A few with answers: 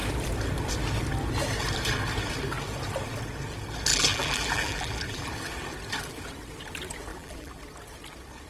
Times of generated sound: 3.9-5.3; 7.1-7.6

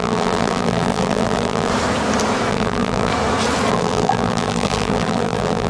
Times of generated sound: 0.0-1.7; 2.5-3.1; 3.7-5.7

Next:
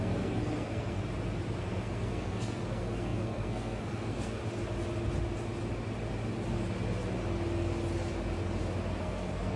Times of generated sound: 0.0-1.0; 1.6-4.4; 9.0-9.6